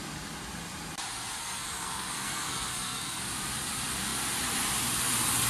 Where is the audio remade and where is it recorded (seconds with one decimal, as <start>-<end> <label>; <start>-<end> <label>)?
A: 0.0-1.4 recorded; 1.4-3.2 remade; 3.2-5.5 recorded